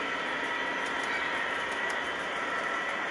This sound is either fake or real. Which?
real